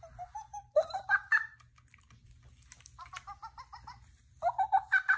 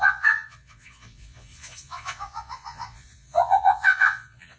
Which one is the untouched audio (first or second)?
first